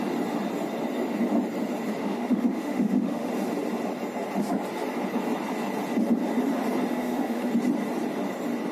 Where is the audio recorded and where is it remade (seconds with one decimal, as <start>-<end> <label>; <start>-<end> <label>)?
0.0-2.0 recorded; 2.0-3.3 remade; 3.3-6.9 recorded; 6.9-7.5 remade; 7.5-8.7 recorded